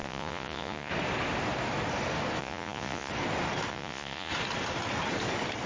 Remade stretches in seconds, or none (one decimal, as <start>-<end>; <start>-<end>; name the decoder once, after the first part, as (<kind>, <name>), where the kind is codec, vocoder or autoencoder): 0.0-0.9 (vocoder, Vocos); 2.4-3.1; 3.7-4.3